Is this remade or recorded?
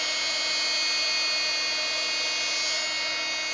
recorded